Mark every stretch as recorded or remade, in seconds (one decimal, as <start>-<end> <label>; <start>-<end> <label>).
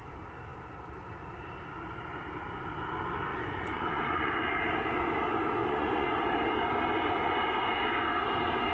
0.0-3.3 recorded; 3.3-4.3 remade; 4.3-5.6 recorded; 5.6-6.2 remade; 6.2-7.2 recorded; 7.2-7.7 remade; 7.7-8.7 recorded